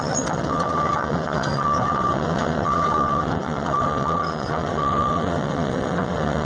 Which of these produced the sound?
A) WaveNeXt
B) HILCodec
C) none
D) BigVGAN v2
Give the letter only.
A